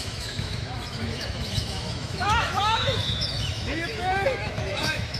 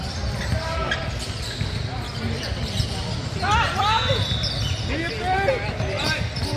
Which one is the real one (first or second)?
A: second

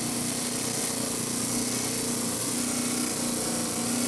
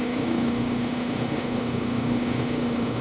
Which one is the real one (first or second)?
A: first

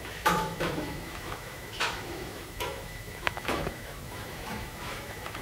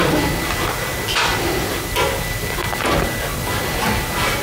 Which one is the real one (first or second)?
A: second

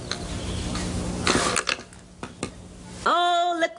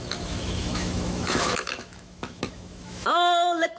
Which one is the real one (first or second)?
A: first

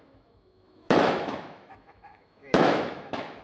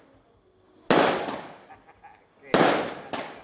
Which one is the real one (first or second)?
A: second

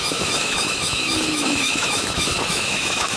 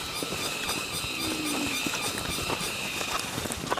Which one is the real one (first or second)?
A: second